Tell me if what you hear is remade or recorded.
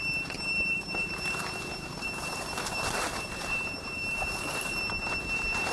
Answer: remade